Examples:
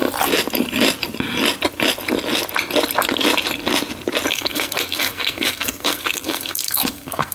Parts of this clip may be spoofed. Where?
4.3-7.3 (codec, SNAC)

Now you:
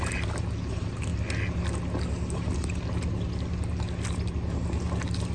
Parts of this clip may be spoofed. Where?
none

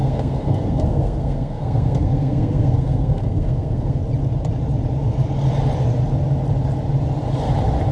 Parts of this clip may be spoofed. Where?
0.0-4.0 (codec, SNAC)

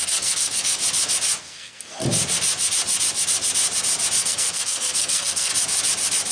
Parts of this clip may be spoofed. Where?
0.0-0.8 (codec, SNAC); 1.4-2.0; 4.2-5.5

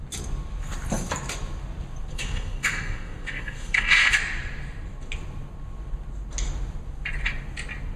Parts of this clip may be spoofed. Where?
2.1-4.1 (codec, SNAC)

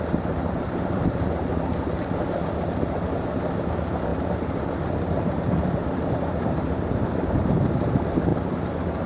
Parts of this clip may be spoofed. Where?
none